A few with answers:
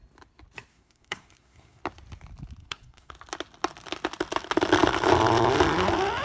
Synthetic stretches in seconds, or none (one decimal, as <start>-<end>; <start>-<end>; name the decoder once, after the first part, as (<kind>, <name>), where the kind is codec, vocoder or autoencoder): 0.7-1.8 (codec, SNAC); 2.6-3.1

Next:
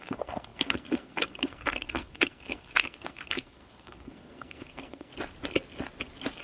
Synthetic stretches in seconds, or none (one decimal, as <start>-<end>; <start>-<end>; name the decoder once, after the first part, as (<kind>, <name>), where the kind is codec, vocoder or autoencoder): 0.0-5.1 (codec, SNAC)

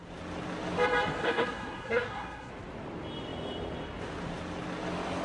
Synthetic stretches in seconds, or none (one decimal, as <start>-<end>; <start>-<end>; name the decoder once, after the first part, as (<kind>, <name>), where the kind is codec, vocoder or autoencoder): 1.2-2.5 (codec, SNAC)

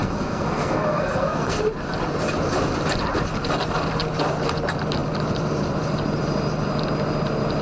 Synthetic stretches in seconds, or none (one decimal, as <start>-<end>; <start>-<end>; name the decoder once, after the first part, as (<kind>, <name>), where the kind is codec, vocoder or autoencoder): 0.0-1.6 (codec, SNAC)